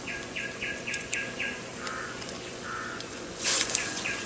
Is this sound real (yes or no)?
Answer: no